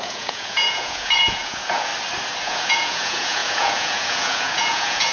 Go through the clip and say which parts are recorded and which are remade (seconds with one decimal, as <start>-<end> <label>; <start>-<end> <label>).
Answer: 0.0-1.9 remade; 1.9-2.4 recorded; 2.4-5.1 remade